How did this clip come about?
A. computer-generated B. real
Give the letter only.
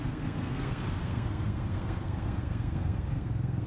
A